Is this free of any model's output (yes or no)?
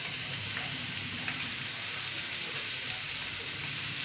no